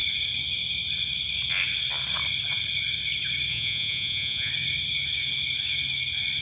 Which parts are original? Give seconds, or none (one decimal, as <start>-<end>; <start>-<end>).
0.0-3.5; 4.5-6.4